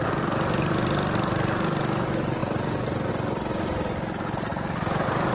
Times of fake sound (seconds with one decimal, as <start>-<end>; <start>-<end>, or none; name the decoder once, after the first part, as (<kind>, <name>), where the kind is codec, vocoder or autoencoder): none